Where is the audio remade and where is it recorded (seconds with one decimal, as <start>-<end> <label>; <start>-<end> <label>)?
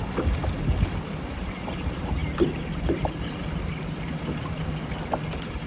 0.0-5.7 recorded